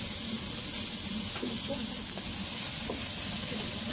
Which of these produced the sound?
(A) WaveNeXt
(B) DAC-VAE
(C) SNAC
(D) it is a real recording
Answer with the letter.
D